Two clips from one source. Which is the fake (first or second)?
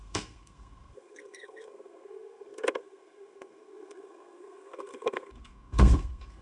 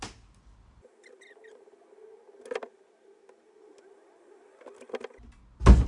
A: first